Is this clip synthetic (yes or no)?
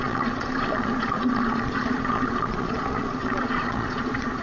yes